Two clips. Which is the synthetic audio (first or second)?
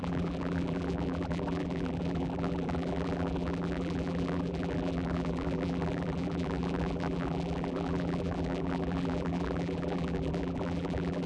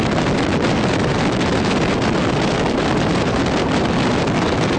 first